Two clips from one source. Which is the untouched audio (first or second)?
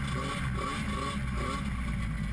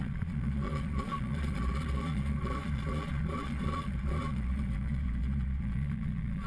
first